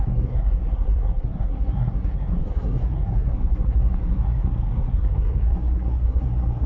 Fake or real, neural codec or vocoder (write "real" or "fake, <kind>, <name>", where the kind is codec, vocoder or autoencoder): fake, codec, SNAC